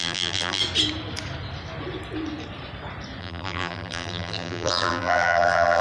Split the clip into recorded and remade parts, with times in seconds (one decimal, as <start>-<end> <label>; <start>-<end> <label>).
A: 0.0-0.6 remade; 0.6-3.2 recorded; 3.2-5.8 remade